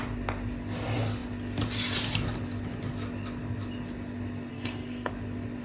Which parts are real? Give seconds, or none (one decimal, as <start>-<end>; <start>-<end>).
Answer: 0.0-4.5; 5.1-5.6